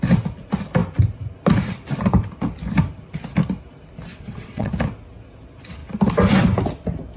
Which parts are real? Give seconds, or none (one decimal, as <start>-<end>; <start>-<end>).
0.0-4.1; 4.7-7.2